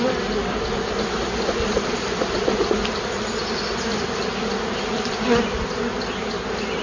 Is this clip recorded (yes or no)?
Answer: yes